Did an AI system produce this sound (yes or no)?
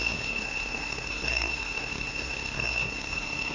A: yes